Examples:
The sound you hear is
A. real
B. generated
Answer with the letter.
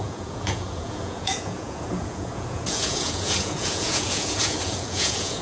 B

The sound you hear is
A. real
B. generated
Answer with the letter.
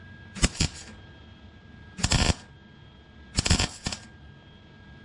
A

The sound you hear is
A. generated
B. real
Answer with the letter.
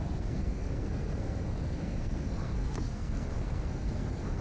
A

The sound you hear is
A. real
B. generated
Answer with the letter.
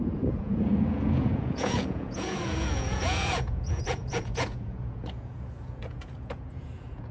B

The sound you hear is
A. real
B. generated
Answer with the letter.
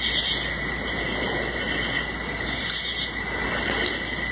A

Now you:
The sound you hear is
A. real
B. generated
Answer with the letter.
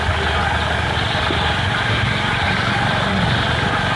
A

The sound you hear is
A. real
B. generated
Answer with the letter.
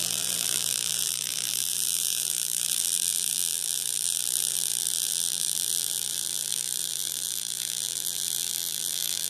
B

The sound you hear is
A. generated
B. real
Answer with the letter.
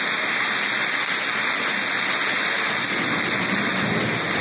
B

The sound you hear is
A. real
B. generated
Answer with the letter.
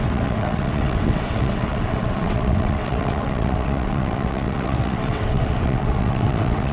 B